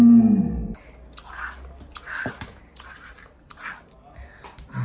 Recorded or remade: recorded